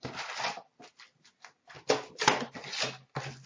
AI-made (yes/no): no